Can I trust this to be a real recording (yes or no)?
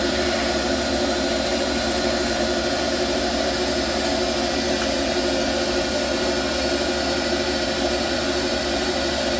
no